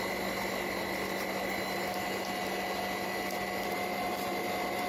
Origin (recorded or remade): recorded